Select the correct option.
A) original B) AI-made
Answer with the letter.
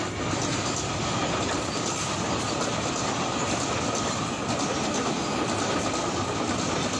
A